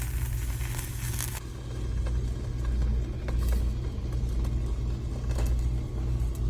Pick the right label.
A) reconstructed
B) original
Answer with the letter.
B